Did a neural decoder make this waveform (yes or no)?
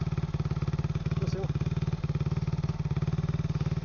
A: no